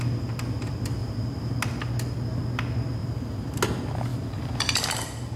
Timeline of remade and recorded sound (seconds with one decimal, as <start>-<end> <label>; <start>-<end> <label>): 0.0-1.0 recorded; 1.0-1.5 remade; 1.5-3.0 recorded; 3.0-3.6 remade; 3.6-4.1 recorded; 4.1-5.0 remade; 5.0-5.4 recorded